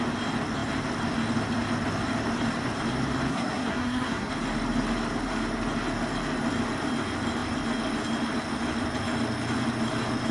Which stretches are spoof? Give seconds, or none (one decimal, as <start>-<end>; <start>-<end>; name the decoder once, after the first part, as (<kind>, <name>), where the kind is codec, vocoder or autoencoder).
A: 3.3-4.3 (codec, SNAC)